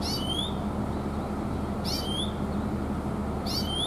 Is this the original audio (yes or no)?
yes